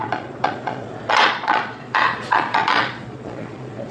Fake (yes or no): yes